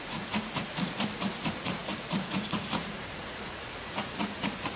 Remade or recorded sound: remade